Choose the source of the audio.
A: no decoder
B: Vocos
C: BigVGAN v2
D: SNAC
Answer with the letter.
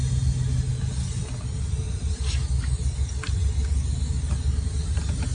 A